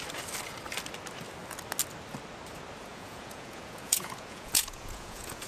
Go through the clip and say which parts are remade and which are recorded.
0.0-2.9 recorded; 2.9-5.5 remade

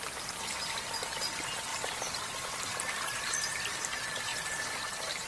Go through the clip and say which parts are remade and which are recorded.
0.0-5.3 recorded

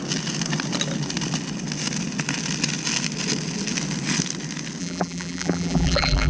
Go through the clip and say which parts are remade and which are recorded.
0.0-4.8 recorded; 4.8-6.3 remade